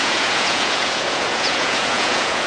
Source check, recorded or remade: remade